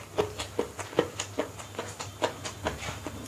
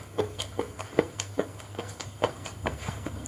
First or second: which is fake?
second